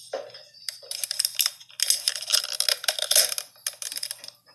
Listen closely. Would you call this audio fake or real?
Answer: real